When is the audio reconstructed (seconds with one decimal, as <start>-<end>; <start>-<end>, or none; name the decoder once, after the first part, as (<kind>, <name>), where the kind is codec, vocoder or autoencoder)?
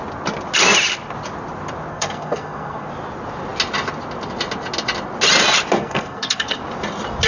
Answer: 1.9-2.9 (codec, SNAC); 5.8-6.6